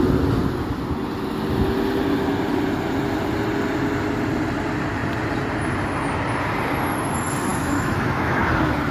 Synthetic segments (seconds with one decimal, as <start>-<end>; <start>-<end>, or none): 7.5-8.4